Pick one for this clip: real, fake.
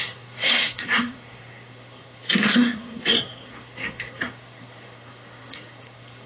fake